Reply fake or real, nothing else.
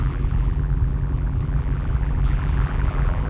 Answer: fake